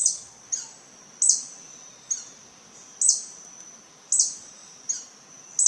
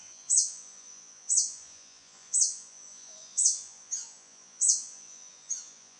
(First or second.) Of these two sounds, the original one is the first